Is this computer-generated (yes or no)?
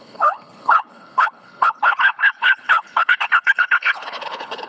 yes